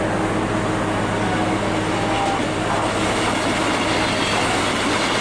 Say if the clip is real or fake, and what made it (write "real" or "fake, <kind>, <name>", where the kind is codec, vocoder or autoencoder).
real